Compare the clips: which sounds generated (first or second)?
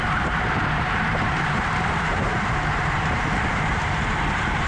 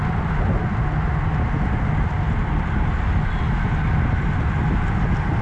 first